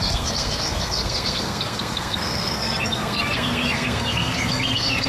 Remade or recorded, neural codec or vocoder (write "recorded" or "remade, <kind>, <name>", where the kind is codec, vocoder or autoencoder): remade, codec, SNAC